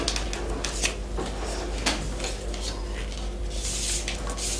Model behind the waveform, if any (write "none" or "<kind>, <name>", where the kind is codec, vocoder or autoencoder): none